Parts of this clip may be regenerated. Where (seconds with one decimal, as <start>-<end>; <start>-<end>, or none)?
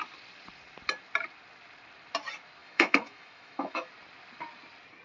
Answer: 2.6-3.9